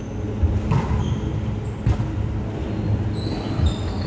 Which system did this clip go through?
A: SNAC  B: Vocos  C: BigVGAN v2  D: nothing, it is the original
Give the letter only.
D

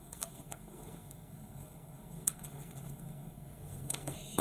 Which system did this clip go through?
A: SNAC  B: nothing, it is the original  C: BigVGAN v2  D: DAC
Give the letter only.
A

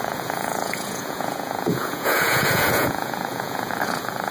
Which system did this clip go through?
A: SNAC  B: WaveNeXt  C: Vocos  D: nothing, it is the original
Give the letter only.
C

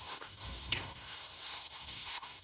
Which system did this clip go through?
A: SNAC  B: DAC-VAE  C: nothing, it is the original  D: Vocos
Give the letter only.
A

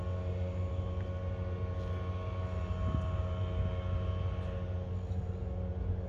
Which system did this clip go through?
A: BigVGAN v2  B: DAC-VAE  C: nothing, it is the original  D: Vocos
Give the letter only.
C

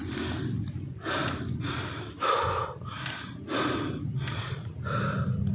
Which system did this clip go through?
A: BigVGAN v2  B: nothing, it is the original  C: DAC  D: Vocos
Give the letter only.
B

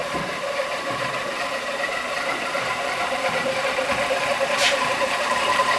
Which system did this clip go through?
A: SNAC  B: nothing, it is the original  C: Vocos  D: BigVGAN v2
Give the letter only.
D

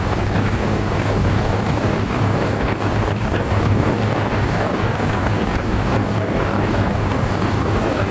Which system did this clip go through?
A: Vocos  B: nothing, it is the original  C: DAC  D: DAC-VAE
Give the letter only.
C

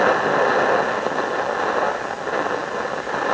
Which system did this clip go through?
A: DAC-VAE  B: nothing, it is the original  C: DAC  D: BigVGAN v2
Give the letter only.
B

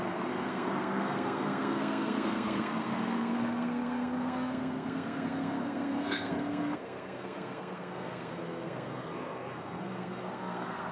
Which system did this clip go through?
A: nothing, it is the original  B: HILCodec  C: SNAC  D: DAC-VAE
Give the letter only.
C